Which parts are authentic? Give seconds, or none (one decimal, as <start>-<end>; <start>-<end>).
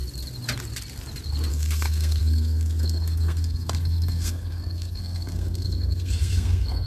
0.0-1.5